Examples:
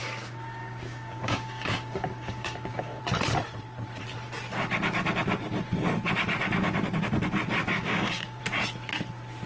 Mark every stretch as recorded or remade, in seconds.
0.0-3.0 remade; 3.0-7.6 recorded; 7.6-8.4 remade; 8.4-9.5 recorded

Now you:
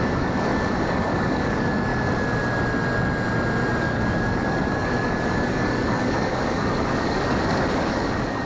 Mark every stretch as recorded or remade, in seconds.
0.0-1.9 remade; 1.9-3.8 recorded; 3.8-8.5 remade

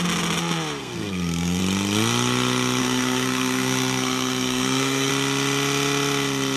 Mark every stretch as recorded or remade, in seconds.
0.0-0.8 recorded; 0.8-1.6 remade; 1.6-2.8 recorded; 2.8-5.1 remade; 5.1-6.6 recorded

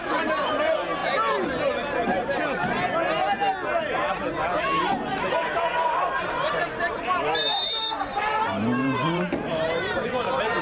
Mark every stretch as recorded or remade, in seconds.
0.0-1.0 remade; 1.0-6.0 recorded; 6.0-10.6 remade

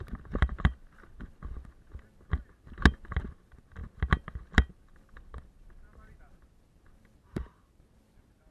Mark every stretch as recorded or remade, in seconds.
0.0-8.5 recorded